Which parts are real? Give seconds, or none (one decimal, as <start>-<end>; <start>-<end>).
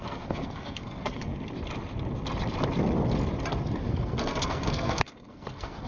1.3-3.9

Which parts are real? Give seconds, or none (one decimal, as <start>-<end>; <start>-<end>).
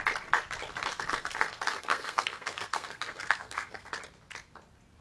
0.0-0.9; 3.9-5.0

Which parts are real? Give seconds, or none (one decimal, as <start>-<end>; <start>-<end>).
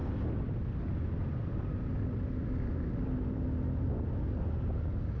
0.0-5.2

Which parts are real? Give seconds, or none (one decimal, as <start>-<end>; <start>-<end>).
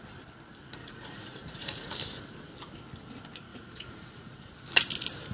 0.0-0.8; 1.9-3.5; 4.5-5.3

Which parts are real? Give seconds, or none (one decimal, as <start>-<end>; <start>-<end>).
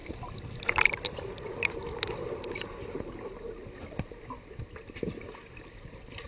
0.0-6.3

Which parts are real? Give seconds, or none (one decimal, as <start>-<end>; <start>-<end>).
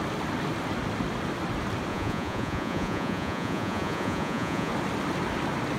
0.0-1.9; 4.7-5.8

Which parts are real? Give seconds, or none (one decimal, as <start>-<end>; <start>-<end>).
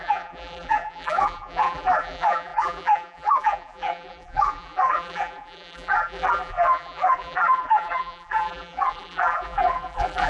none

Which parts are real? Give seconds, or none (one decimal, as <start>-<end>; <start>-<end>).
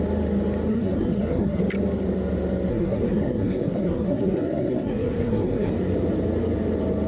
0.0-0.7; 1.6-2.7; 5.7-7.1